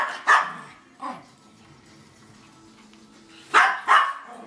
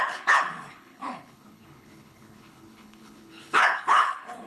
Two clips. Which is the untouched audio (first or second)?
first